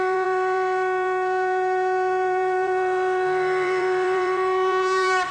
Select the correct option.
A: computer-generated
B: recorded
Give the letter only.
A